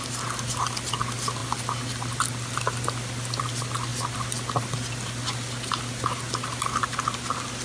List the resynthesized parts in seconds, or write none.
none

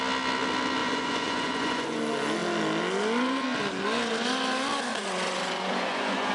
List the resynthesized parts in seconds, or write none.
0.8-2.0 (vocoder, Vocos); 4.9-6.3

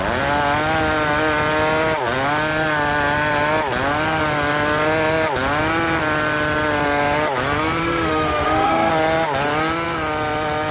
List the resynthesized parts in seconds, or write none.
7.8-8.9 (autoencoder, DAC-VAE)

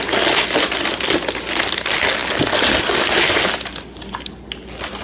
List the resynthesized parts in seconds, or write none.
none

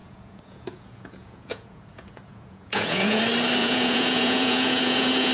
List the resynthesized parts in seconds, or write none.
0.0-3.2 (vocoder, Vocos); 3.6-5.3

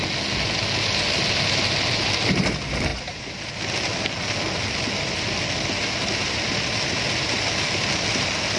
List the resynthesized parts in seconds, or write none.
2.9-3.6 (vocoder, BigVGAN v2)

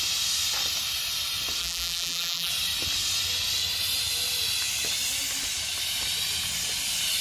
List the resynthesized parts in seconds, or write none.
1.6-2.5 (vocoder, BigVGAN v2)